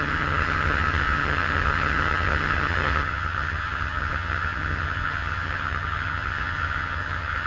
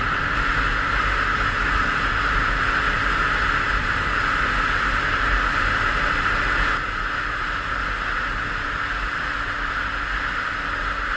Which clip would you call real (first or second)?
second